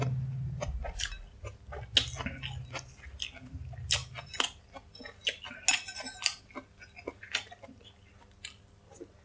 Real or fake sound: real